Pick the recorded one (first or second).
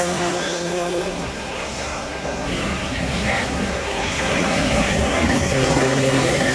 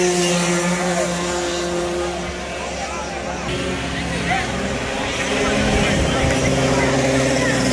second